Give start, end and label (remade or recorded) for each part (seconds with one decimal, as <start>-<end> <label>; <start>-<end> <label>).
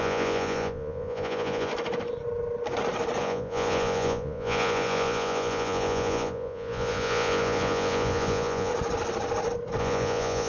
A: 0.0-1.7 remade; 1.7-3.2 recorded; 3.2-8.7 remade; 8.7-9.8 recorded; 9.8-10.5 remade